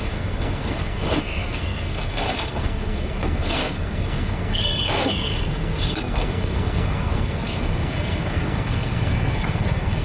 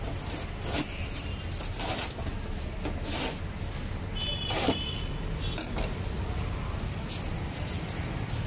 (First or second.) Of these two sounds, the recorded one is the second